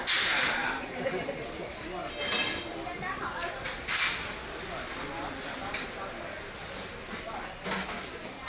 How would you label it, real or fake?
real